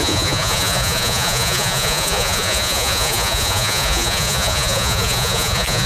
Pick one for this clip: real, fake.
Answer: fake